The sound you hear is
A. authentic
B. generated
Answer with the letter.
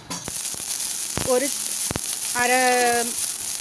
A